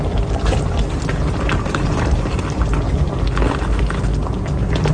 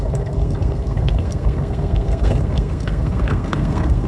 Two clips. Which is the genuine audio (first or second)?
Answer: first